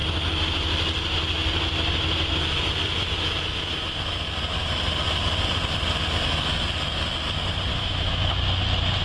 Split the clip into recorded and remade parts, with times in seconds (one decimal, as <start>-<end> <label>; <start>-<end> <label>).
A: 0.0-7.7 recorded; 7.7-8.3 remade; 8.3-9.0 recorded